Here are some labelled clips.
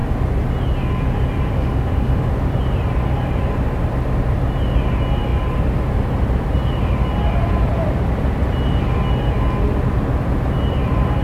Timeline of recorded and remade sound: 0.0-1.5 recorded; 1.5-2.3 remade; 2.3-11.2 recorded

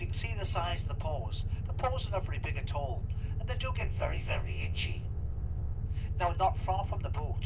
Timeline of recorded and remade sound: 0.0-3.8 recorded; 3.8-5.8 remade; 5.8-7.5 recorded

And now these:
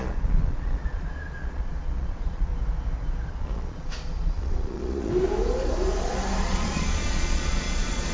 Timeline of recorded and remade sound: 0.0-2.5 remade; 2.5-3.3 recorded; 3.3-5.1 remade; 5.1-6.4 recorded; 6.4-8.1 remade

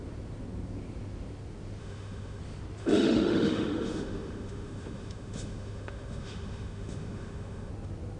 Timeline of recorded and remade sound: 0.0-1.8 recorded; 1.8-2.4 remade; 2.4-2.8 recorded; 2.8-7.7 remade; 7.7-8.2 recorded